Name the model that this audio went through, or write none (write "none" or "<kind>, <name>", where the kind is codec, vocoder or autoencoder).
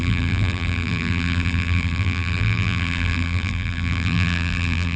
vocoder, BigVGAN v2